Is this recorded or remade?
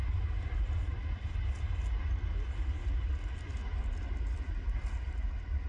recorded